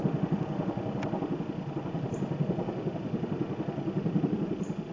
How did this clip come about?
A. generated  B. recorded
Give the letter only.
B